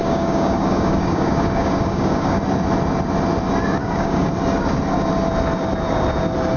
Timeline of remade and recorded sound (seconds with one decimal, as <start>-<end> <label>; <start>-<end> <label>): 0.0-2.4 remade; 2.4-3.8 recorded; 3.8-4.3 remade; 4.3-6.6 recorded